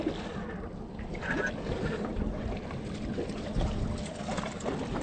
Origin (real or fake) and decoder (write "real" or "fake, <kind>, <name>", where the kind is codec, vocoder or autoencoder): real